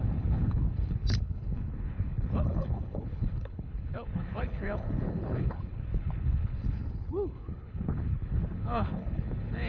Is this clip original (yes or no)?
no